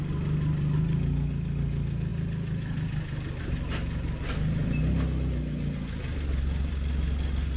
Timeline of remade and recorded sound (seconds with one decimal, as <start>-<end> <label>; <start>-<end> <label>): 0.0-7.6 recorded